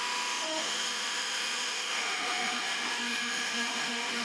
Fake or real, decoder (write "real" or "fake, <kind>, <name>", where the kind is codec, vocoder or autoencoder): fake, autoencoder, DAC-VAE